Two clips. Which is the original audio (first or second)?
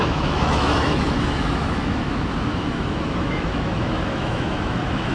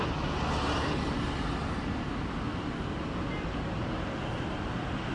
second